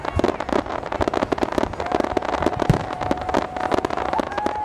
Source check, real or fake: real